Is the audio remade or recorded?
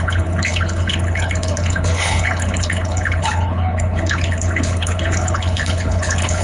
remade